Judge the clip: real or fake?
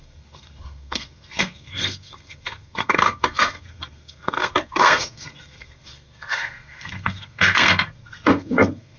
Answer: fake